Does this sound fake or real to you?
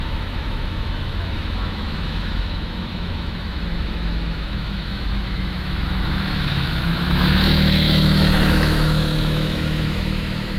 fake